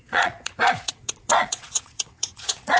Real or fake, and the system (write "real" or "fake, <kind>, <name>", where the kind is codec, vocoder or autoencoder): fake, vocoder, Vocos